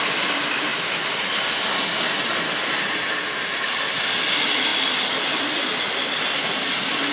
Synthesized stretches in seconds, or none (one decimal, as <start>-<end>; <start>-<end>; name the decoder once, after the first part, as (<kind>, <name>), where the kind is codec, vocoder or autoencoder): 0.7-1.3 (vocoder, BigVGAN v2)